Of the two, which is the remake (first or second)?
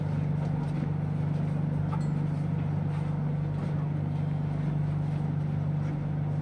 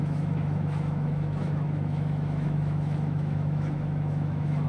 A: second